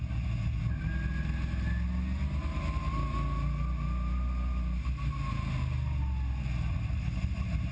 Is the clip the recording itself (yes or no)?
yes